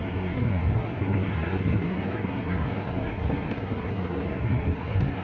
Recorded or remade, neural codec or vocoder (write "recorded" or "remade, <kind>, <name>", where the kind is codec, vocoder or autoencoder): remade, codec, SNAC